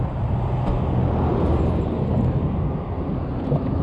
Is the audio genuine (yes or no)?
yes